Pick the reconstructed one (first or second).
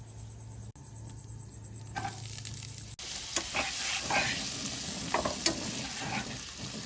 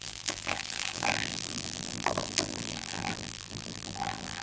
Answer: second